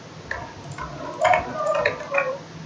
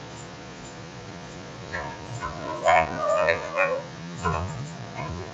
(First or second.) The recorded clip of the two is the first